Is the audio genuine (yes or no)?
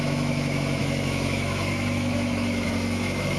no